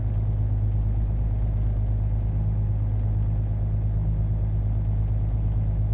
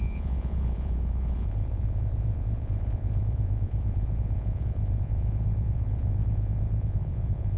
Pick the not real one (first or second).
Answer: second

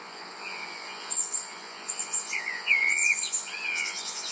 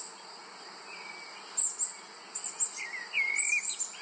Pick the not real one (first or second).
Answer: first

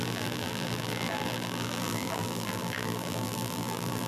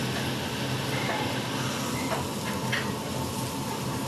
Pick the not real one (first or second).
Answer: first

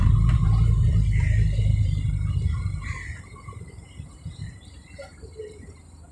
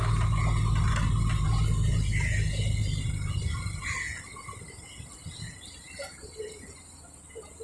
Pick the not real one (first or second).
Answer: first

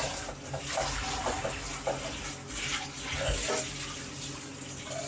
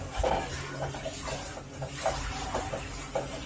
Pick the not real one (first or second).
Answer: second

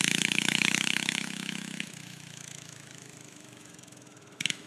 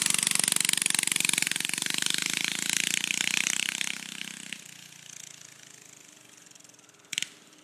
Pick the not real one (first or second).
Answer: first